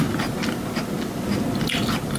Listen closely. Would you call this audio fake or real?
real